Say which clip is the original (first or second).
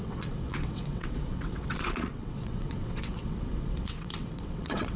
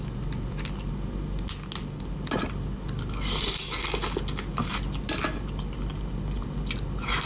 second